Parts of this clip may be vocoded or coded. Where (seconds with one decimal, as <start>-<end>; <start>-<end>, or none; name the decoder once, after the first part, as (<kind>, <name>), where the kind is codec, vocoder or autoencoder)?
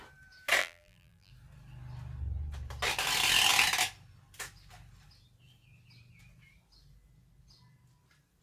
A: 0.6-1.3 (vocoder, BigVGAN v2)